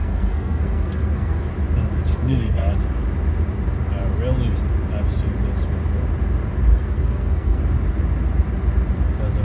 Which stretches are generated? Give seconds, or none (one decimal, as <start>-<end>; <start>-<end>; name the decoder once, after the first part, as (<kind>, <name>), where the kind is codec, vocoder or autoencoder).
0.0-1.4 (codec, SNAC); 2.1-2.7; 6.7-7.6

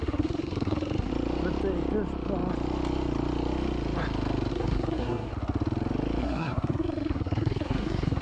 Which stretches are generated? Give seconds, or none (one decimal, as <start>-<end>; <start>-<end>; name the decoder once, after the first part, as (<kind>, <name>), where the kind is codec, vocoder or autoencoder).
0.0-1.1 (codec, SNAC); 4.5-5.3; 6.2-8.2

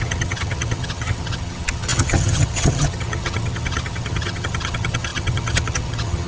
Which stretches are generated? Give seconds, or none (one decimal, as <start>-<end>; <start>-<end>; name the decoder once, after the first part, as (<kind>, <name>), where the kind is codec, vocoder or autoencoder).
0.0-6.3 (vocoder, HiFi-GAN)

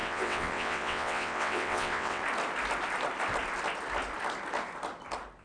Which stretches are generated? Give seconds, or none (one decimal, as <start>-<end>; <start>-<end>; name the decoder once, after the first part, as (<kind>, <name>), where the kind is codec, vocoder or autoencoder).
0.0-2.2 (vocoder, WaveNeXt)

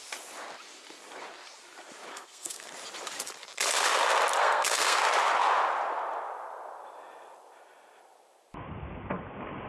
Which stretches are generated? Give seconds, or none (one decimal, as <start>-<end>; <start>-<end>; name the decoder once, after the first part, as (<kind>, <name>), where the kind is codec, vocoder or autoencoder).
2.1-2.7 (codec, SNAC); 4.4-5.0

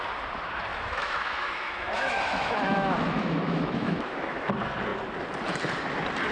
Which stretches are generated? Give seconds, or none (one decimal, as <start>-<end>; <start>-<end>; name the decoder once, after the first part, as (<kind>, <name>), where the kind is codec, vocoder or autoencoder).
0.7-4.5 (autoencoder, DAC-VAE)